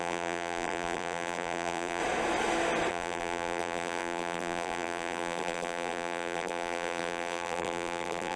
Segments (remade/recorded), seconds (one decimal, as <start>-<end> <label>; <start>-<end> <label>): 0.0-2.0 remade; 2.0-2.9 recorded; 2.9-8.4 remade